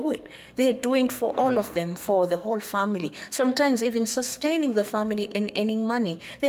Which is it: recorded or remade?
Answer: remade